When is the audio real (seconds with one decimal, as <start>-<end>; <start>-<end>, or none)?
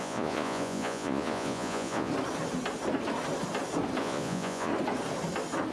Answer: 2.1-4.0; 4.7-5.7